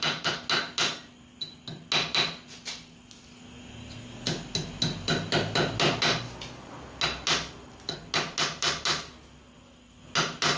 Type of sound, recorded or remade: recorded